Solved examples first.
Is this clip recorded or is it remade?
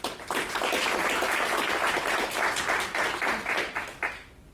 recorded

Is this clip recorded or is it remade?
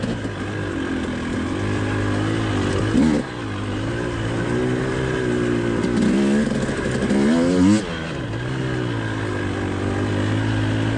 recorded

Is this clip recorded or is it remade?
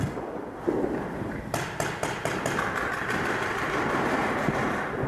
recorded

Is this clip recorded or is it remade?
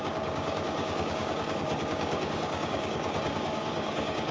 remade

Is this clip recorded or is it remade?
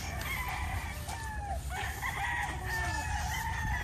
recorded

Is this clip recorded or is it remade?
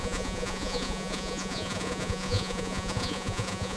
remade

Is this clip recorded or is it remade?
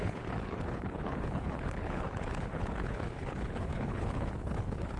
remade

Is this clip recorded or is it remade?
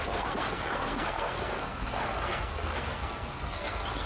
remade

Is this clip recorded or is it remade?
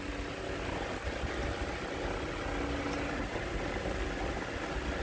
recorded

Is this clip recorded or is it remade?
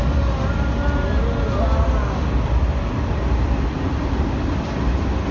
recorded